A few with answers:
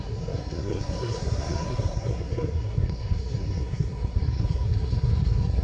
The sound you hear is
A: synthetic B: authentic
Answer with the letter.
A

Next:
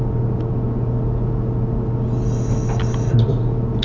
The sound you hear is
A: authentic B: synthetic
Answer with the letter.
A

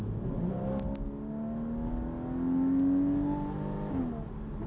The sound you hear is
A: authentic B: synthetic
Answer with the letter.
A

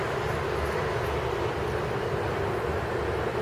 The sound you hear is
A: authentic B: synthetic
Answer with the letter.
A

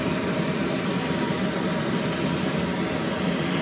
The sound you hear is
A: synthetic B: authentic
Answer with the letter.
B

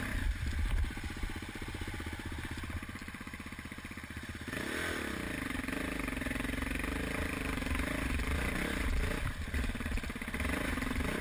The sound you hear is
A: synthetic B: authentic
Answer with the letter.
B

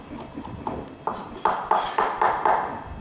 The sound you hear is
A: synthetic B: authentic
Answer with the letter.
B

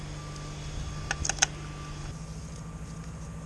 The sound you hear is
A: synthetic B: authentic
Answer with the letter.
B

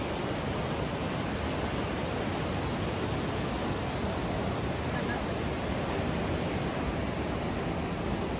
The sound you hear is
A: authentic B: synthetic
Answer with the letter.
A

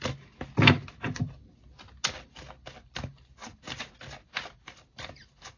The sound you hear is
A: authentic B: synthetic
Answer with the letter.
A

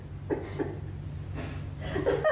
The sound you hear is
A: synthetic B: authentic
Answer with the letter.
B